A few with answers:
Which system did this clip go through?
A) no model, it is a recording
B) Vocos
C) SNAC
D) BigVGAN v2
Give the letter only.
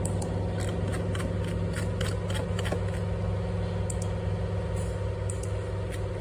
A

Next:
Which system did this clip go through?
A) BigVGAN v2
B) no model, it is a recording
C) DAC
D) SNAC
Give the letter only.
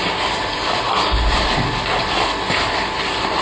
B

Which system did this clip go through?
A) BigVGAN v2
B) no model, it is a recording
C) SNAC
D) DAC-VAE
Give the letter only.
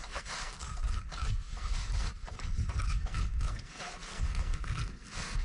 C